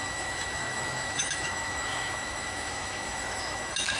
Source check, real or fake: fake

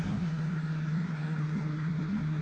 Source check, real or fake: fake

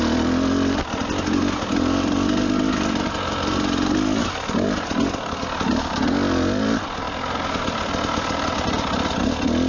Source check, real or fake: real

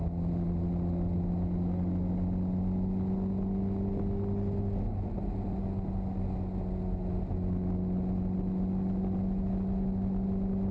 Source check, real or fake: real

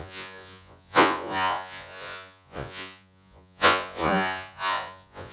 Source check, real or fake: fake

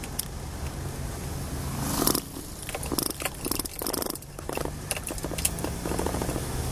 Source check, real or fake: real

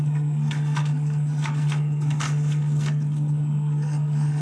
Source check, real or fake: fake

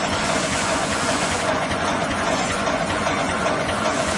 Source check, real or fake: fake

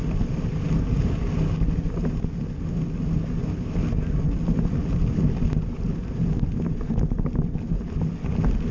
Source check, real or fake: real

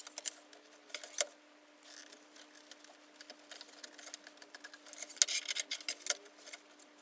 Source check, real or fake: real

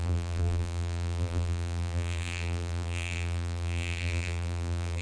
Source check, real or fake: fake